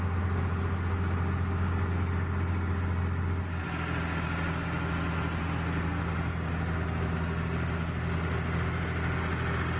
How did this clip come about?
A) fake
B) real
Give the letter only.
B